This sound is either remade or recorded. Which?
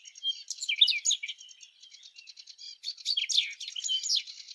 recorded